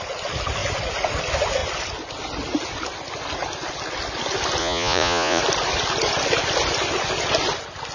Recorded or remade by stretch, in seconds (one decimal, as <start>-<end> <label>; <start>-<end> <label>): 0.0-4.6 recorded; 4.6-5.4 remade; 5.4-7.9 recorded